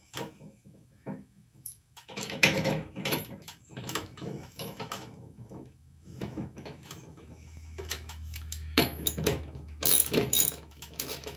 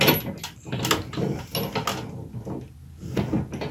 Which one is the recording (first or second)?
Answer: second